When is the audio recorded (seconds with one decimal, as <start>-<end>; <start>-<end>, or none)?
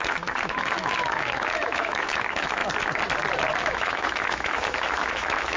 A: 2.6-3.6